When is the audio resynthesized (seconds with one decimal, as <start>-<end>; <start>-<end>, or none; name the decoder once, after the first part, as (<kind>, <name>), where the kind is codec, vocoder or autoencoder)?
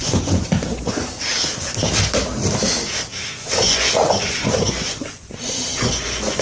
0.0-1.3 (vocoder, Vocos); 3.3-6.4